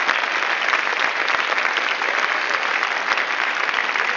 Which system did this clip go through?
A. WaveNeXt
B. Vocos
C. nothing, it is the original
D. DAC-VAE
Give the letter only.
C